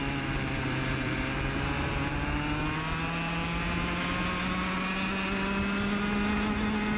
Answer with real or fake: real